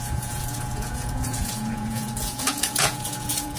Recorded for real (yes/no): no